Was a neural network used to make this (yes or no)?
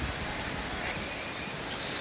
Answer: no